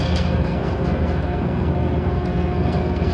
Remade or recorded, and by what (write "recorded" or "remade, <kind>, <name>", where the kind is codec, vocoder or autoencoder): remade, codec, SNAC